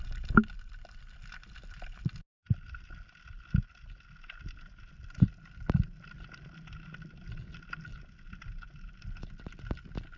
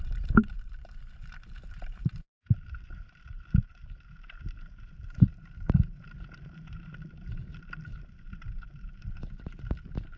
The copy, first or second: second